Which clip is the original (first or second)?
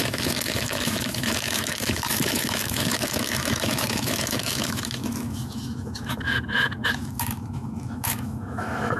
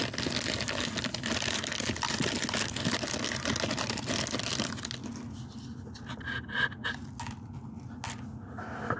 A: second